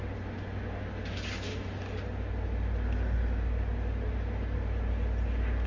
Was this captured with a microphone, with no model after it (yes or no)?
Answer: yes